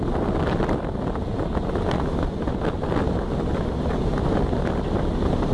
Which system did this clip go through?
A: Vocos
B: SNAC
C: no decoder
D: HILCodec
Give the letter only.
C